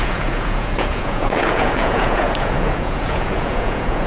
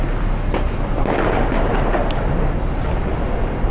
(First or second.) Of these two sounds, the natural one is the second